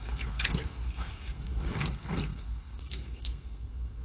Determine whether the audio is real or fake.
fake